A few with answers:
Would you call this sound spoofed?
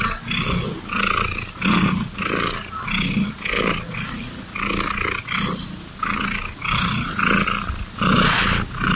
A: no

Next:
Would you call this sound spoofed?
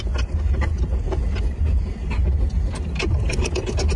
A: no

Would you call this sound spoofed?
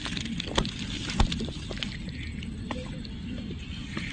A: no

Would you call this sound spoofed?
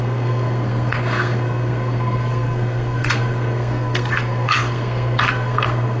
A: yes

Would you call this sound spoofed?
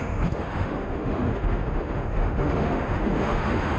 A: yes